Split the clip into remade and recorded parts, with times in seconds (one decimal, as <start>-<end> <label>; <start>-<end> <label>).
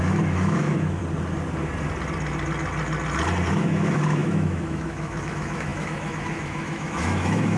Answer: 0.0-1.0 remade; 1.0-3.5 recorded; 3.5-7.6 remade